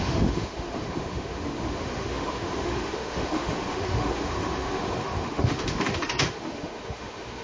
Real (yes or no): no